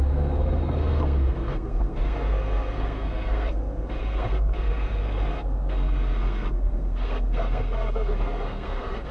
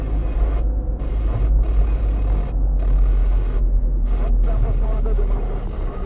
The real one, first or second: second